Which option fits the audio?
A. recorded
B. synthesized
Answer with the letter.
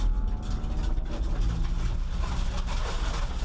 A